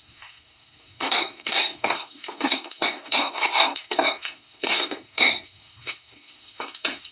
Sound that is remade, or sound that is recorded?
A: remade